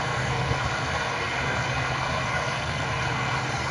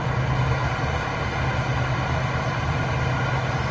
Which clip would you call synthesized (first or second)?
first